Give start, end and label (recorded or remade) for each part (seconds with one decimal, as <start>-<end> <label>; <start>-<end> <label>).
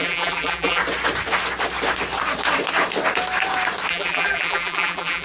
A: 0.0-0.8 remade; 0.8-3.9 recorded; 3.9-5.2 remade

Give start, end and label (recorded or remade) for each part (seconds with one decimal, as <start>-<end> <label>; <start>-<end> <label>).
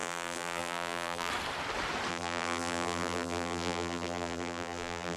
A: 0.0-1.3 remade; 1.3-2.1 recorded; 2.1-5.2 remade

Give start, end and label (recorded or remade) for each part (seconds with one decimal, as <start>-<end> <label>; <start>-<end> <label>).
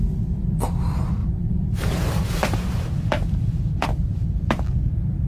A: 0.0-1.2 recorded; 1.2-4.4 remade; 4.4-5.3 recorded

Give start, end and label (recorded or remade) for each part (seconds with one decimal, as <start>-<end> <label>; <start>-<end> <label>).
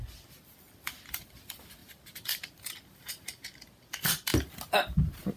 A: 0.0-4.3 remade; 4.3-5.4 recorded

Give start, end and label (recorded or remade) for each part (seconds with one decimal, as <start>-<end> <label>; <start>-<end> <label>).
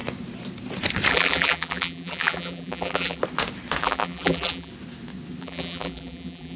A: 0.0-1.1 recorded; 1.1-3.2 remade; 3.2-3.8 recorded; 3.8-4.7 remade; 4.7-5.4 recorded; 5.4-6.6 remade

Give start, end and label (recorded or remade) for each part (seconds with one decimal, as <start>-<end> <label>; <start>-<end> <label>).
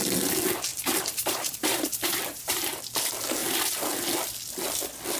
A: 0.0-0.7 recorded; 0.7-2.8 remade; 2.8-5.2 recorded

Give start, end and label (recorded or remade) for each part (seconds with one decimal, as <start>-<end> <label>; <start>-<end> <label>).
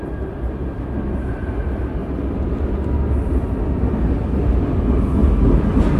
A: 0.0-6.0 recorded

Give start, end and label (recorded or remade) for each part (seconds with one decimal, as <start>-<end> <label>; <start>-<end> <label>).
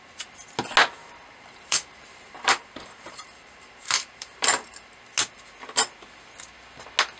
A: 0.0-1.0 recorded; 1.0-5.0 remade; 5.0-7.2 recorded